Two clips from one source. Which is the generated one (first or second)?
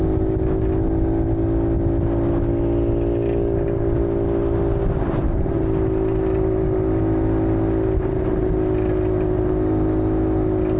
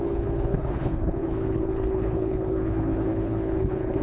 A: second